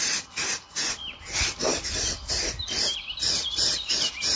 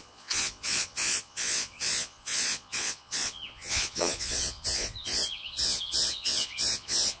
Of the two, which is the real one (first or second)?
first